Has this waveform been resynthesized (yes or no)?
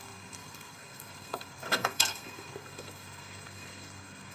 yes